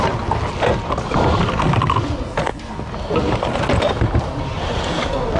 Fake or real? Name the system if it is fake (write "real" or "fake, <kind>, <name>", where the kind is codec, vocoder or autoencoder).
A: real